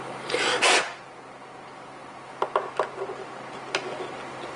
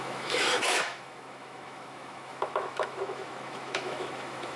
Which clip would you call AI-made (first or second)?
second